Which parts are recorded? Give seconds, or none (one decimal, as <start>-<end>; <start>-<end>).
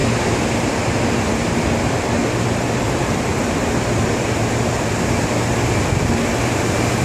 2.2-2.8; 3.3-6.5